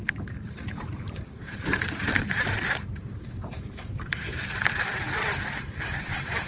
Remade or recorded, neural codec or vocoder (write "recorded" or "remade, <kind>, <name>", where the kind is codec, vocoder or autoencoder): remade, vocoder, BigVGAN v2